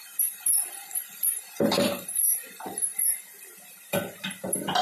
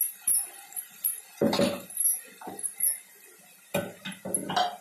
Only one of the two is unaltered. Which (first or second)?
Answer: second